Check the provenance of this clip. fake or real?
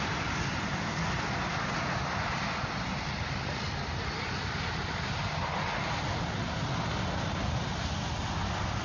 real